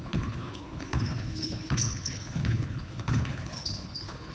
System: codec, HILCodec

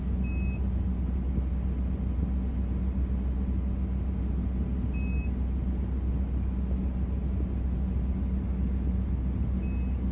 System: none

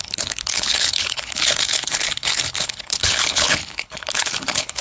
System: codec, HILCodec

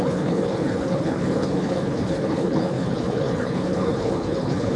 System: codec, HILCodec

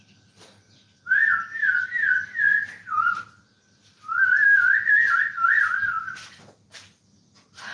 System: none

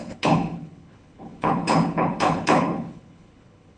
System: codec, HILCodec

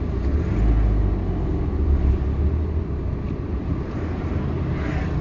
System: none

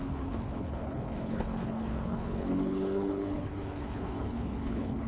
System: codec, HILCodec